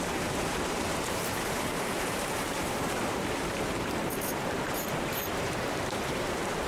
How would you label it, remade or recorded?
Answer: remade